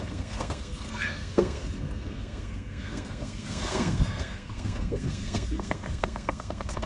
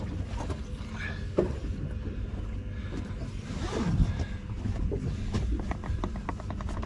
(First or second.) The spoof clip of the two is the first